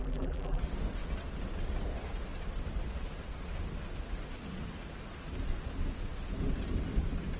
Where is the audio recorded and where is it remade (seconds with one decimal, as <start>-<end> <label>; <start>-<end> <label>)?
0.0-0.6 remade; 0.6-7.4 recorded